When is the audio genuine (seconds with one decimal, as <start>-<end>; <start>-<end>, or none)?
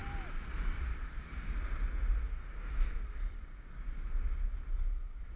0.0-5.4